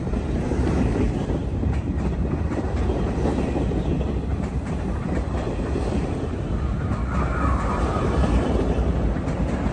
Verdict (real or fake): fake